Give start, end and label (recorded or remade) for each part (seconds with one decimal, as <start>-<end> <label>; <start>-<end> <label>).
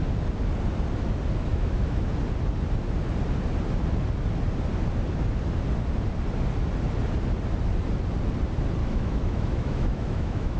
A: 0.0-1.5 recorded; 1.5-2.1 remade; 2.1-8.8 recorded; 8.8-10.6 remade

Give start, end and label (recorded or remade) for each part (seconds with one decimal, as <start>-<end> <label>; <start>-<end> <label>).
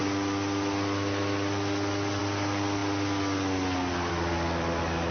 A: 0.0-5.1 recorded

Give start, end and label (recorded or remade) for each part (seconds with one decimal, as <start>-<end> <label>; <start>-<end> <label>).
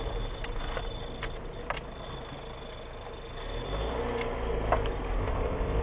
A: 0.0-5.2 recorded; 5.2-5.8 remade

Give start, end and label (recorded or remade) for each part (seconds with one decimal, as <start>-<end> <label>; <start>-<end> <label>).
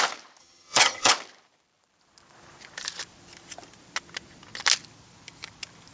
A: 0.0-0.4 recorded; 0.4-1.1 remade; 1.1-5.9 recorded